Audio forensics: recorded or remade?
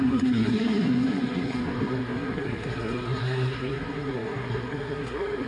remade